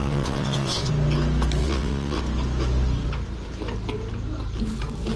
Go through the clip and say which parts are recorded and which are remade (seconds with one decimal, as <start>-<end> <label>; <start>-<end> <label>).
0.0-0.9 remade; 0.9-1.6 recorded; 1.6-2.2 remade; 2.2-5.2 recorded